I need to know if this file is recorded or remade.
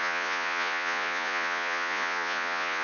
remade